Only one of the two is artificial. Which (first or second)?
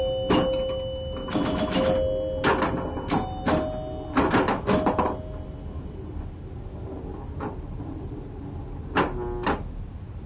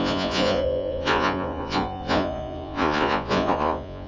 second